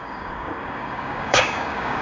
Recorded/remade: remade